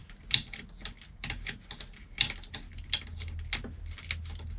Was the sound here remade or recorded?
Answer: recorded